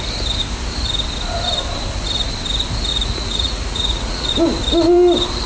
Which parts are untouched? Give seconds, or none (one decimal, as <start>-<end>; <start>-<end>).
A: 0.0-2.9; 4.3-5.5